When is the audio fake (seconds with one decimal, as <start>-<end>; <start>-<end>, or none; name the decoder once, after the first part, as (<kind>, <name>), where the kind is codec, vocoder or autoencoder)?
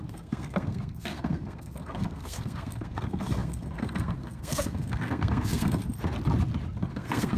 0.0-5.8 (codec, SNAC); 6.9-7.4